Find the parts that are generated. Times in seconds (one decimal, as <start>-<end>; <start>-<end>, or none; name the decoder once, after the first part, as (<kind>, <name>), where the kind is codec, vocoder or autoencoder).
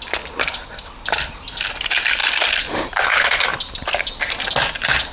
none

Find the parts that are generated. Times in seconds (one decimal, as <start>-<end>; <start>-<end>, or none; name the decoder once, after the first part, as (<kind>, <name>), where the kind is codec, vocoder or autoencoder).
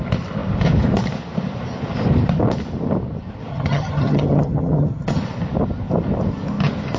3.5-5.2 (vocoder, HiFi-GAN)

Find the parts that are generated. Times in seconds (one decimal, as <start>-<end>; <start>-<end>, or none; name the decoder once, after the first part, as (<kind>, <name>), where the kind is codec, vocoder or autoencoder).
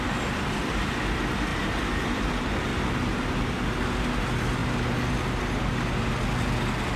1.5-2.3 (vocoder, BigVGAN v2); 2.7-3.5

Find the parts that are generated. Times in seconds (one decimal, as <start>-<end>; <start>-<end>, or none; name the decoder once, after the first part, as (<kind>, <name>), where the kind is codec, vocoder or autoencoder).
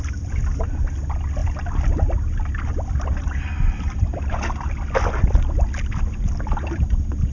1.4-5.8 (vocoder, BigVGAN v2)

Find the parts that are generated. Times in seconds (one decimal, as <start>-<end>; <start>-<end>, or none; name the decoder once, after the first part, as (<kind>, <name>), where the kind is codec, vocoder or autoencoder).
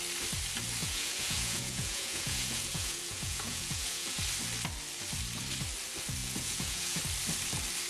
0.8-4.2 (vocoder, Vocos); 6.2-7.0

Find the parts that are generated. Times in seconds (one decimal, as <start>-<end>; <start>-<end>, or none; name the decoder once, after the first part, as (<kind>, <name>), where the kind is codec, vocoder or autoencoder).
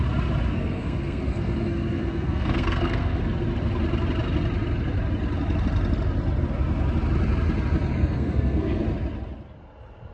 0.5-3.2 (codec, SNAC); 8.0-8.8